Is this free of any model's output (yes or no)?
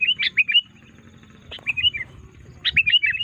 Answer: yes